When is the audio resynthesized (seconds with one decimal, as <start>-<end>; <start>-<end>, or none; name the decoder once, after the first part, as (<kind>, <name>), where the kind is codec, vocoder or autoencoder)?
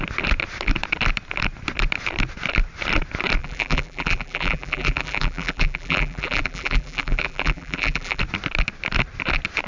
3.4-8.2 (vocoder, BigVGAN v2)